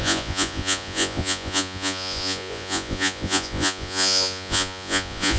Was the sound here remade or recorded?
remade